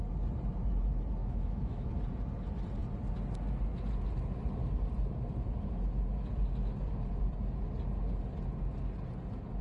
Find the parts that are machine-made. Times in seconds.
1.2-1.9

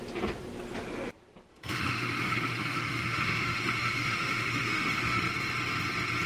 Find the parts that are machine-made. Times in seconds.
1.5-5.2

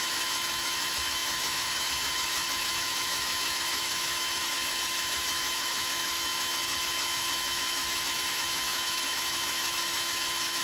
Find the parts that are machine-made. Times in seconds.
0.0-10.6

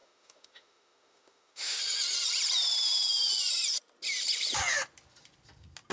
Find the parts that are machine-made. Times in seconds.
0.0-1.8

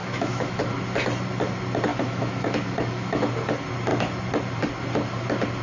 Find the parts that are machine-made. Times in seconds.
0.0-0.6; 1.9-3.3